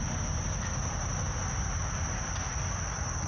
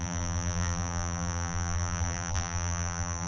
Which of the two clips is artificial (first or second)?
second